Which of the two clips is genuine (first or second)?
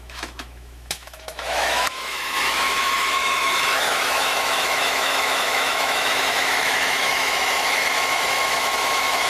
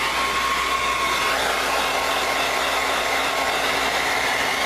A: second